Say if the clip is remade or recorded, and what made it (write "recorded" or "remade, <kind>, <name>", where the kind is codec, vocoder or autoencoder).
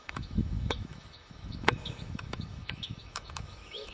remade, autoencoder, DAC-VAE